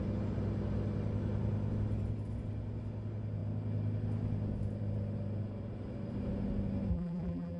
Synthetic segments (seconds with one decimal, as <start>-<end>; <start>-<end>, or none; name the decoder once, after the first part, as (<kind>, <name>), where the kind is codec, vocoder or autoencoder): 6.9-7.6 (vocoder, BigVGAN v2)